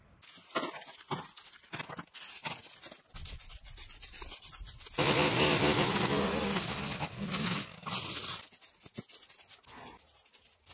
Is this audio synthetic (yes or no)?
no